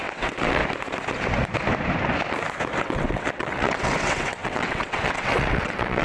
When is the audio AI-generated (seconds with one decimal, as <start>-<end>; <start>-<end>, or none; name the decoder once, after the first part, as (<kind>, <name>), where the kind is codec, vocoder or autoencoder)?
0.0-0.6 (vocoder, WaveNeXt); 2.8-6.0